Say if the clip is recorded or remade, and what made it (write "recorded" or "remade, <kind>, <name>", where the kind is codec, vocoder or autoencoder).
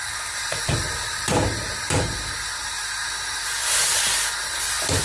recorded